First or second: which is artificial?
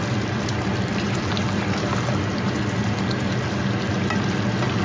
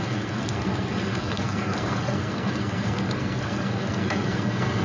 second